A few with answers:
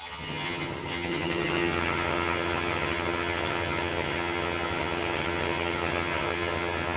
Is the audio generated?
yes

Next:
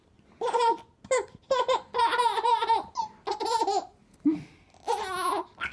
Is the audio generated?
no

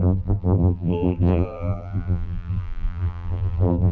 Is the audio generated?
yes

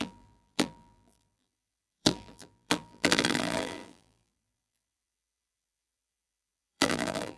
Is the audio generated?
yes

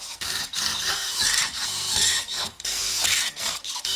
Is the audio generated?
yes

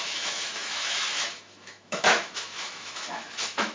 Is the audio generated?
yes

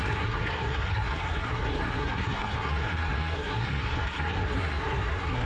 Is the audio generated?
yes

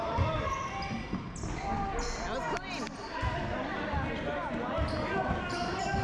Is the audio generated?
no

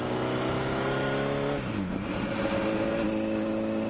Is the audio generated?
no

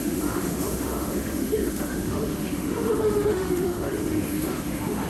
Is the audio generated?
yes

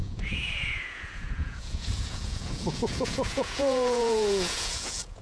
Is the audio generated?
yes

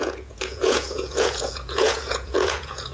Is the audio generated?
yes